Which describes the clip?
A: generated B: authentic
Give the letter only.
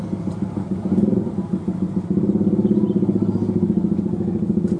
B